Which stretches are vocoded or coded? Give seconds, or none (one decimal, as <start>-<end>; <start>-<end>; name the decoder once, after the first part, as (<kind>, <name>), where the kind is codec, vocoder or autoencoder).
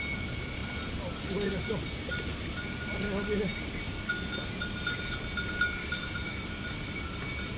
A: 5.8-6.5 (codec, DAC)